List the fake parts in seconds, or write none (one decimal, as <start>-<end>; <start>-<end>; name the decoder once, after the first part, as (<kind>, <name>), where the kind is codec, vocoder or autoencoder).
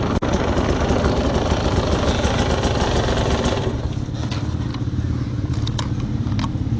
4.7-5.5 (vocoder, BigVGAN v2)